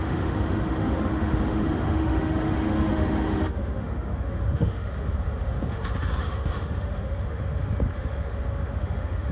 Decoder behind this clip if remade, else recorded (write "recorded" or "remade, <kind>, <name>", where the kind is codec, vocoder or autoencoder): remade, autoencoder, DAC-VAE